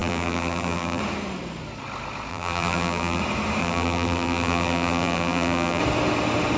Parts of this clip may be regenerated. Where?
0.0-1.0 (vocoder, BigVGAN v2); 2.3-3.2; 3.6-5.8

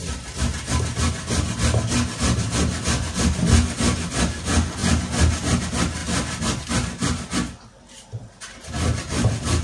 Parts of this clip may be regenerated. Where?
4.8-5.6 (vocoder, BigVGAN v2)

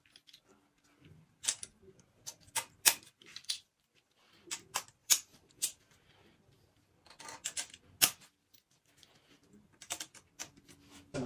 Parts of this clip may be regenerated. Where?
3.3-4.0 (vocoder, BigVGAN v2); 5.0-5.9

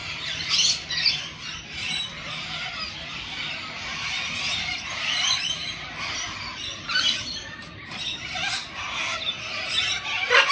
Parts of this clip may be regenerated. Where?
3.9-8.5 (vocoder, BigVGAN v2)

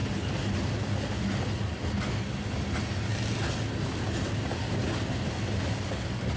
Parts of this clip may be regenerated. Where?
none